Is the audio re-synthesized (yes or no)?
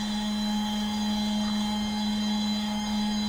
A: yes